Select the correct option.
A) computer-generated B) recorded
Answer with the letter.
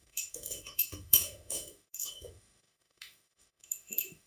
A